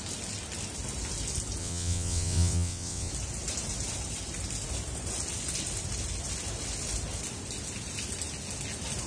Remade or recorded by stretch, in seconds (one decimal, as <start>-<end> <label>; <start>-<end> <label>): 0.0-1.6 recorded; 1.6-3.1 remade; 3.1-9.1 recorded